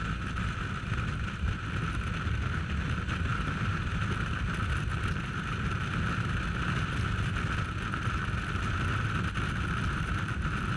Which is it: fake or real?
real